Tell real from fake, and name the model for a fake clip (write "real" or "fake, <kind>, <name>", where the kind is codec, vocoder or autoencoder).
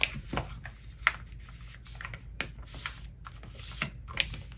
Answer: real